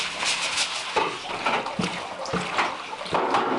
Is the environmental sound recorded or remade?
recorded